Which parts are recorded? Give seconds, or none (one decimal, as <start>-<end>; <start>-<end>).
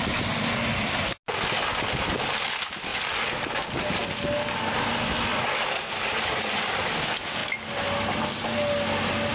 0.0-9.3